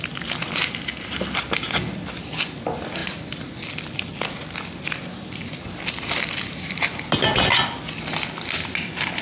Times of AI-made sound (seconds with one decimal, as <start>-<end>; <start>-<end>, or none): none